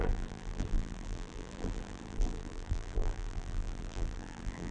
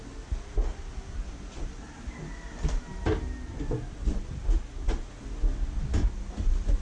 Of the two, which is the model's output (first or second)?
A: first